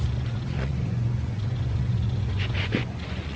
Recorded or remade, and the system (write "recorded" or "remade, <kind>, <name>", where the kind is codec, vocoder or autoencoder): remade, vocoder, Vocos